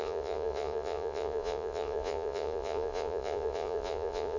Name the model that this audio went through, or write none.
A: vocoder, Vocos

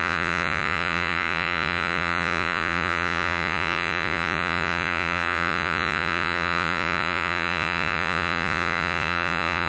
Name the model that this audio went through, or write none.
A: vocoder, Vocos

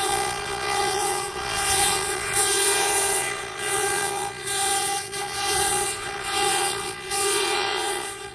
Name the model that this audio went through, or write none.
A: vocoder, Vocos